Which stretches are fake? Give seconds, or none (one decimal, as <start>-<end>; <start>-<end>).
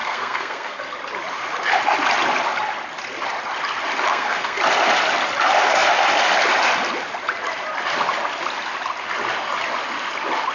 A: 0.0-0.8; 4.1-4.6